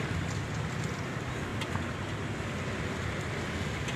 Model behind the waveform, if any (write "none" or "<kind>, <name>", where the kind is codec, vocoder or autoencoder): none